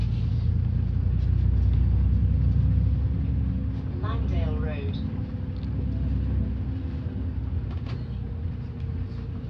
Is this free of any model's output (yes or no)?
yes